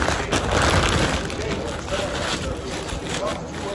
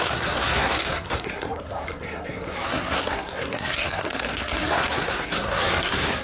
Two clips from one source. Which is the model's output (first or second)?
second